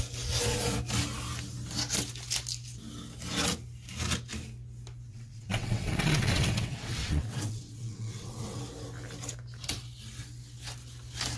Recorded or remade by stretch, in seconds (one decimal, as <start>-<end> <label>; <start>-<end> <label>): 0.0-5.1 recorded; 5.1-8.6 remade; 8.6-11.4 recorded